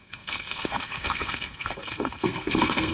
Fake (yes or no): yes